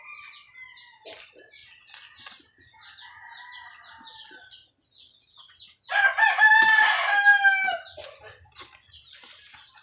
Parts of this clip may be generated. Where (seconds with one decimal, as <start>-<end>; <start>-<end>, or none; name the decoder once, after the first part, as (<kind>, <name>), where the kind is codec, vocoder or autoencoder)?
none